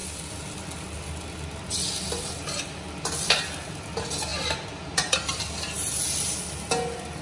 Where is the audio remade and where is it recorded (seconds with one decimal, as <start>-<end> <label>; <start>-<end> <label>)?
0.0-7.2 recorded